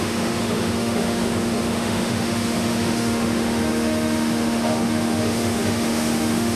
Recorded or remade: remade